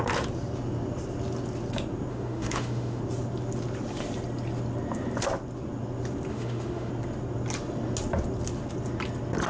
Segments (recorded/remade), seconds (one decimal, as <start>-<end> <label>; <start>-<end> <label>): 0.0-2.1 recorded; 2.1-3.0 remade; 3.0-6.3 recorded; 6.3-6.9 remade; 6.9-9.5 recorded